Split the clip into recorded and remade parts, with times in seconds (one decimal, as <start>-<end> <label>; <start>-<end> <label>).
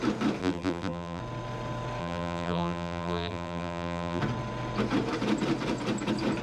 0.0-0.4 recorded; 0.4-1.2 remade; 1.2-2.0 recorded; 2.0-4.2 remade; 4.2-6.4 recorded